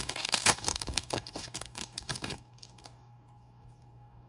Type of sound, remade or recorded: remade